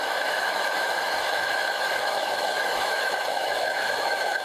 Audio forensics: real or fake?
fake